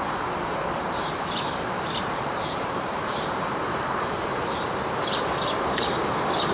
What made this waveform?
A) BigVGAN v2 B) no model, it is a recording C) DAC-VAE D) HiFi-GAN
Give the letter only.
A